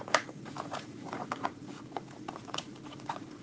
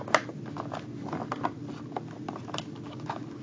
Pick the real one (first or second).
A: second